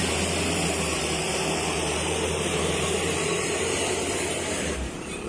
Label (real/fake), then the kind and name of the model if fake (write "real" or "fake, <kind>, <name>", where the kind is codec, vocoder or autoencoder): fake, vocoder, BigVGAN v2